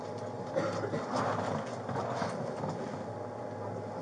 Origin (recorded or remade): recorded